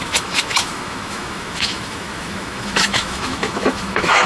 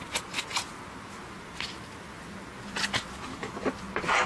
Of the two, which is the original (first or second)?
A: second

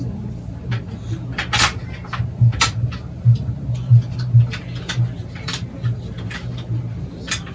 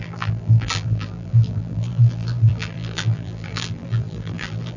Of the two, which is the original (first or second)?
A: first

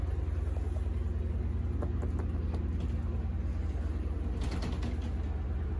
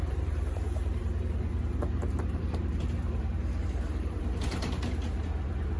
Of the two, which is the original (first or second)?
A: first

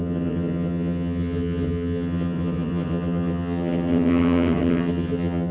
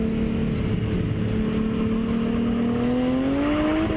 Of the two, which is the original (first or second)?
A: second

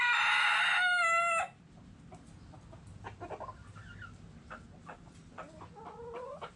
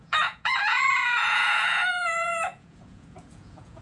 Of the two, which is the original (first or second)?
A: first